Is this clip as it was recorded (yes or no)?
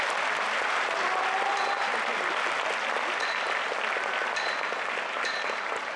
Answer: yes